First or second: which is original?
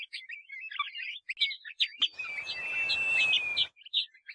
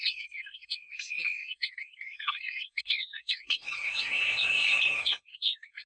first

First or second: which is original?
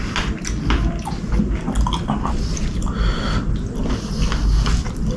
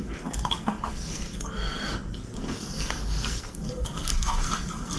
first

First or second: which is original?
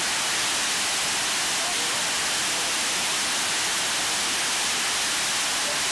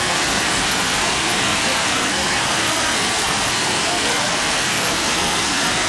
first